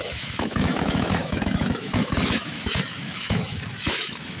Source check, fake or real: fake